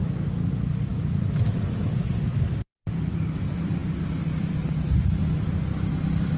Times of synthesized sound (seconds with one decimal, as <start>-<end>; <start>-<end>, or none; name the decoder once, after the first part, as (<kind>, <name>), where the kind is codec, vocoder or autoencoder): 0.5-6.4 (vocoder, BigVGAN v2)